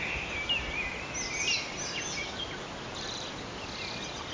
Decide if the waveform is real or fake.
real